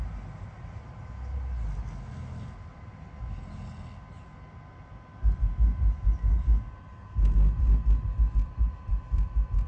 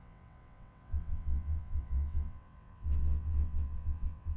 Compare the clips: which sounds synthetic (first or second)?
second